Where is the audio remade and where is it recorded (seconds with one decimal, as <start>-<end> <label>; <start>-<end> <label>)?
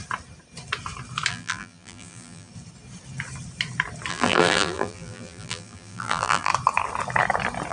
0.0-1.3 recorded; 1.3-2.5 remade; 2.5-4.1 recorded; 4.1-6.5 remade; 6.5-7.7 recorded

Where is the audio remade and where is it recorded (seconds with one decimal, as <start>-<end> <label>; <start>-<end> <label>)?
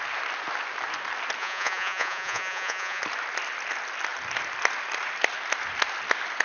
0.0-1.4 recorded; 1.4-3.0 remade; 3.0-6.4 recorded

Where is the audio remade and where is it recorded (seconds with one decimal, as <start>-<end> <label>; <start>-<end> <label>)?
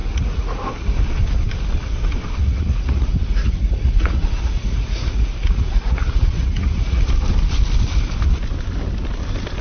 0.0-0.6 remade; 0.6-2.4 recorded; 2.4-7.0 remade; 7.0-9.6 recorded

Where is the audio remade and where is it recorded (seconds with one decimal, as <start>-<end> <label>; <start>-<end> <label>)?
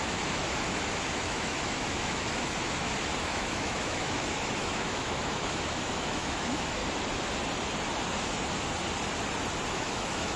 0.0-6.8 remade; 6.8-9.7 recorded; 9.7-10.4 remade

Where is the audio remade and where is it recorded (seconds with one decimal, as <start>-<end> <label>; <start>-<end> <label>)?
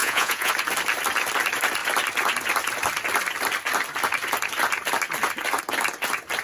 0.0-0.5 remade; 0.5-6.4 recorded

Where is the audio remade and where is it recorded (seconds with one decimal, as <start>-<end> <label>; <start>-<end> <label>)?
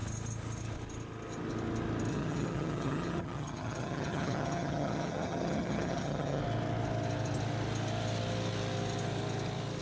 0.0-2.1 recorded; 2.1-6.4 remade; 6.4-9.8 recorded